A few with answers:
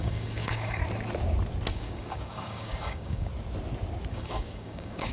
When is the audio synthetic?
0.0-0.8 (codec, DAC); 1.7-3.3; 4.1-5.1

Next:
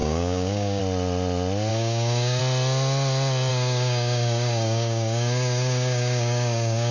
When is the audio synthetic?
0.0-0.8 (codec, DAC); 1.7-2.4; 3.5-6.9